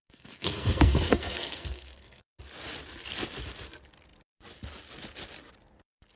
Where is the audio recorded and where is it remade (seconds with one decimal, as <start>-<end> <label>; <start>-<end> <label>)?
0.0-2.4 remade; 2.4-6.2 recorded